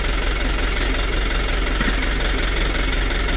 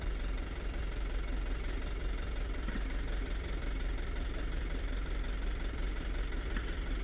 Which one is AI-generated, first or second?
second